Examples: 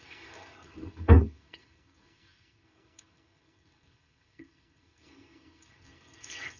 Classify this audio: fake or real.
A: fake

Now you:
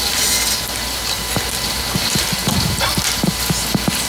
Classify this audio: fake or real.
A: real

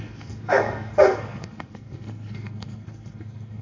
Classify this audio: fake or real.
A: fake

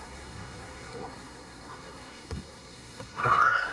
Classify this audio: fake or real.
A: fake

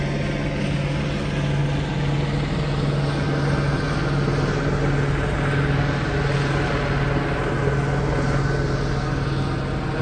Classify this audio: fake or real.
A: real